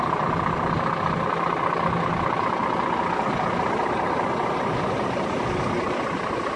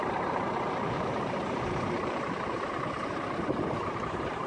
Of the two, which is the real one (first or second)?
first